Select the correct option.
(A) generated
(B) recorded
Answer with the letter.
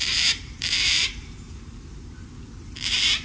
A